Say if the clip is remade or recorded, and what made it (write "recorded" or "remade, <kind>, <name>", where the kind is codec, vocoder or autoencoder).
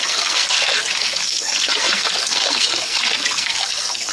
remade, codec, SNAC